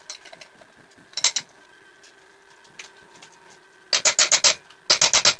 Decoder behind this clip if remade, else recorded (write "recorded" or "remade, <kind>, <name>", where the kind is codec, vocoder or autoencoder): recorded